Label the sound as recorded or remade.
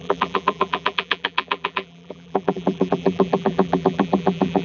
remade